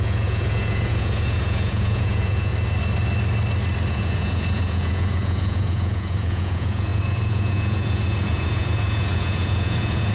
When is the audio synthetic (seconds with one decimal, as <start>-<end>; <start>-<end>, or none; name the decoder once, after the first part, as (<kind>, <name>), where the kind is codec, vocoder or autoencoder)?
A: 0.0-2.5 (vocoder, Vocos); 3.9-10.1